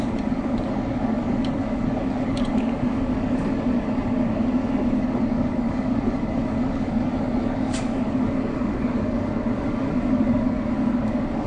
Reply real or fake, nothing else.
fake